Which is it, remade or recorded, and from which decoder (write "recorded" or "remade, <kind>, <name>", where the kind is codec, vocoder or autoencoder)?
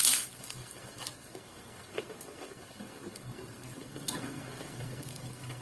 remade, codec, SNAC